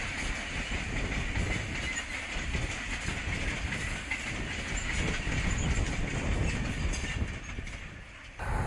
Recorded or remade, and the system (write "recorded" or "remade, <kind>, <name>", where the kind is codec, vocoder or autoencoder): recorded